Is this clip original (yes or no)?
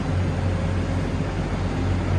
yes